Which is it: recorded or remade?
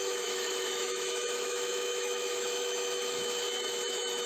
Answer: remade